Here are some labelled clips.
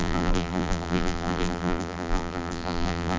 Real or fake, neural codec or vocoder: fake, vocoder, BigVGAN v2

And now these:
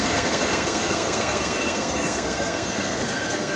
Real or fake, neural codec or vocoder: fake, codec, SNAC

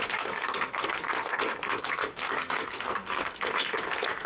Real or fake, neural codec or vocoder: fake, codec, SNAC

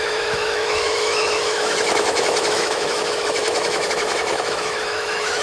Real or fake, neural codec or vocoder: fake, autoencoder, DAC-VAE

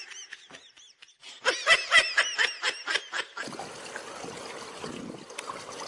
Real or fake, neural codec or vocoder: real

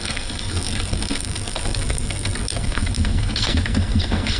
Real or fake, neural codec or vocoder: fake, codec, SNAC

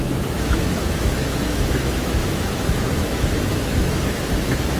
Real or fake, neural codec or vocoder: fake, autoencoder, DAC-VAE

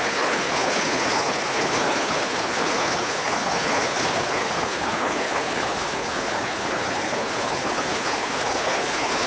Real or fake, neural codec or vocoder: fake, codec, HILCodec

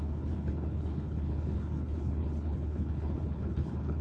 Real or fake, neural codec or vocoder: fake, codec, HILCodec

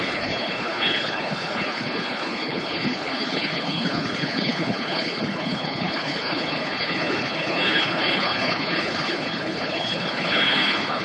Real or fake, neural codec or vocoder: fake, codec, HILCodec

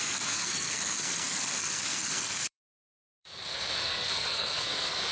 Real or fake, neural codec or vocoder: fake, codec, SNAC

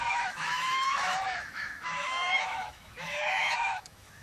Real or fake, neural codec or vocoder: fake, autoencoder, DAC-VAE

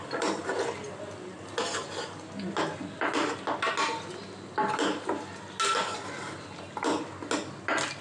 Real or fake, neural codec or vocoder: real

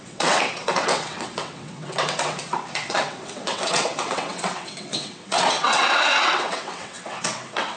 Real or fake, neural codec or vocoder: fake, vocoder, WaveNeXt